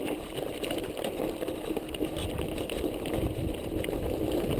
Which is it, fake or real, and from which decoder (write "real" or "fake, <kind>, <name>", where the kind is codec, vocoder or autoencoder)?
real